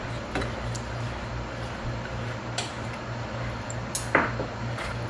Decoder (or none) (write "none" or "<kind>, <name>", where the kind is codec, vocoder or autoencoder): none